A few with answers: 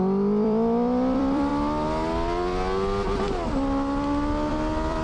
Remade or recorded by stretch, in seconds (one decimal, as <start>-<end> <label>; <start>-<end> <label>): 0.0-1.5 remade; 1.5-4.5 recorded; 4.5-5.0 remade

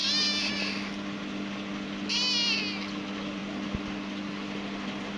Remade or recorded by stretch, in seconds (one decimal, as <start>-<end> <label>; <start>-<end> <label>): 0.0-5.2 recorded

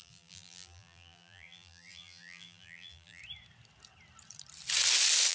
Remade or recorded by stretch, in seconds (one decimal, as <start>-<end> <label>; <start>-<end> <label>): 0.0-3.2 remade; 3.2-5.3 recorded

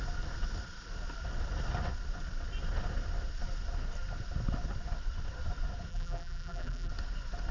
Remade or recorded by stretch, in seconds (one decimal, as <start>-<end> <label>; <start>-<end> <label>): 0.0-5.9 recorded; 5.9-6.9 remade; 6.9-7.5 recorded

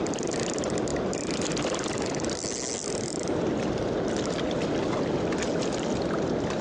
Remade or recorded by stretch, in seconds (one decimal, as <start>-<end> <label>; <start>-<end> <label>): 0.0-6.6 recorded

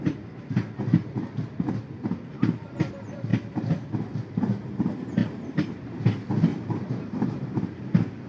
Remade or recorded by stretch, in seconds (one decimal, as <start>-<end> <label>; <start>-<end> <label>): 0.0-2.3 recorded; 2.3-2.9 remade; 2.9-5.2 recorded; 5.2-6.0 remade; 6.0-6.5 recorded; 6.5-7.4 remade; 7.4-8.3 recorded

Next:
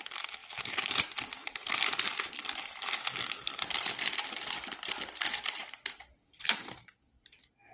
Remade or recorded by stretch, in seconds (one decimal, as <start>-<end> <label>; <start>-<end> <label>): 0.0-0.4 recorded; 0.4-5.0 remade; 5.0-5.6 recorded; 5.6-7.7 remade